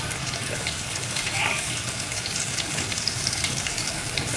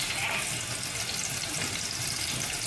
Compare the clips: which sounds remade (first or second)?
first